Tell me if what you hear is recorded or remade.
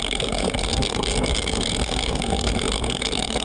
remade